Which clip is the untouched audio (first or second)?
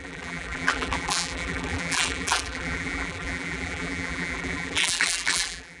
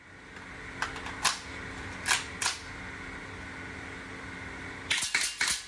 second